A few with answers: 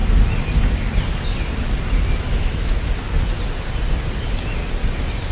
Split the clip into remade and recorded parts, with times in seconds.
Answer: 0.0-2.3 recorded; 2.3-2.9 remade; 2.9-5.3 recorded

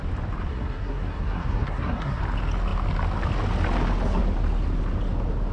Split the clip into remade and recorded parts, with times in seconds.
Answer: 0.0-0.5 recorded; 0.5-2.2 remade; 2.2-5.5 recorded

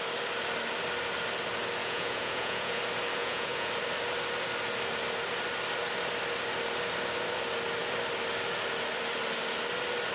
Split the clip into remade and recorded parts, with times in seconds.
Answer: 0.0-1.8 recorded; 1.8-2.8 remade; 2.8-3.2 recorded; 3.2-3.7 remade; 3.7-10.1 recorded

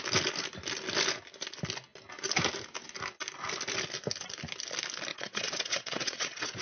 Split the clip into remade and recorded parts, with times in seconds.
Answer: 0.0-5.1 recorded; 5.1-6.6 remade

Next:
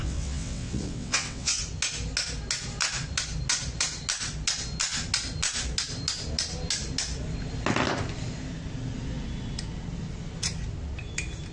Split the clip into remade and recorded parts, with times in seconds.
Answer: 0.0-1.6 remade; 1.6-11.5 recorded